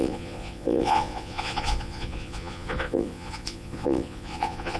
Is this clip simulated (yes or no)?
yes